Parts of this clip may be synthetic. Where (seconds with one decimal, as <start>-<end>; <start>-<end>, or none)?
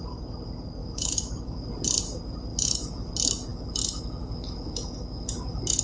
0.8-1.7; 2.5-3.1; 3.5-5.8